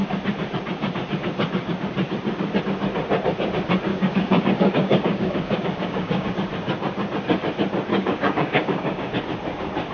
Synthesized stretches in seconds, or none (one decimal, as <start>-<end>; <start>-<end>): 3.9-6.3; 7.9-9.1